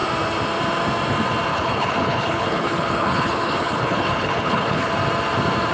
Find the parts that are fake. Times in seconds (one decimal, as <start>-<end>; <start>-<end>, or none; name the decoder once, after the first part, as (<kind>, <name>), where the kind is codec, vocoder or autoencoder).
1.5-4.9 (codec, HILCodec)

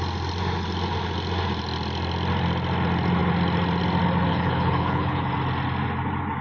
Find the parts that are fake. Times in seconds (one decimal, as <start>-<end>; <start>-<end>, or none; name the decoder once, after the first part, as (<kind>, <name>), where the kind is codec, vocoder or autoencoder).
4.3-5.3 (codec, HILCodec)

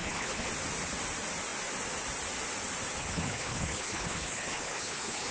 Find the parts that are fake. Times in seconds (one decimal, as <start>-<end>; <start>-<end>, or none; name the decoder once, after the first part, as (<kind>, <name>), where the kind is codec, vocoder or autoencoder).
0.0-0.5 (codec, HILCodec); 3.0-5.3

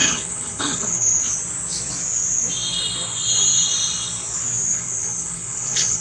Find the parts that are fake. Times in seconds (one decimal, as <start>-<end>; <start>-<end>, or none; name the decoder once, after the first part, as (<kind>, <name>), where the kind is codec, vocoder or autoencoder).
0.0-1.2 (codec, HILCodec); 4.7-6.0

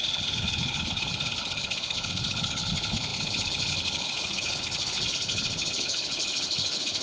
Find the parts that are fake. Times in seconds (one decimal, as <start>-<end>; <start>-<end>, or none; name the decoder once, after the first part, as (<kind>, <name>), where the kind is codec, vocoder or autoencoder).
0.0-7.0 (codec, HILCodec)